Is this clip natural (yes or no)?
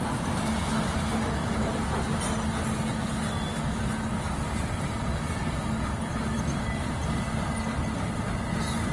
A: yes